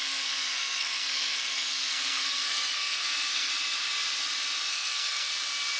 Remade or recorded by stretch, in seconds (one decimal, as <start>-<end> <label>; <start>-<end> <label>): 0.0-3.5 remade; 3.5-4.7 recorded; 4.7-5.3 remade; 5.3-5.8 recorded